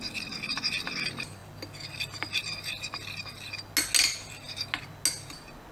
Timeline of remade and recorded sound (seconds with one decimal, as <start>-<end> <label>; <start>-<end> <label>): 0.0-5.7 recorded